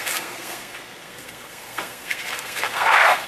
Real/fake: fake